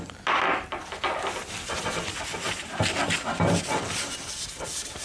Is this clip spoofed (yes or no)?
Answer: no